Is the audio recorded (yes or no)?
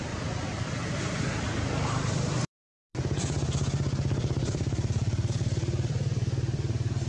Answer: no